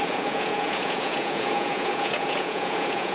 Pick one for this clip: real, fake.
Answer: fake